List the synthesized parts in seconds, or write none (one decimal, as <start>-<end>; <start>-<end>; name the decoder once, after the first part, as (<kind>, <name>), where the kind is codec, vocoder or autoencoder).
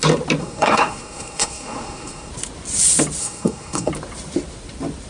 0.4-2.3 (codec, SNAC); 3.2-3.9